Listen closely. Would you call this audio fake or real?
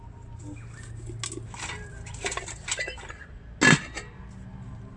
real